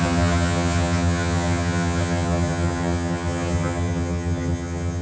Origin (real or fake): fake